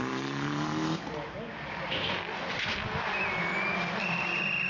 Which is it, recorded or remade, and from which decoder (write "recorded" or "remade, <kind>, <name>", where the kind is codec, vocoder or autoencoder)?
recorded